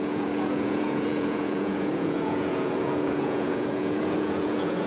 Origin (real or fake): fake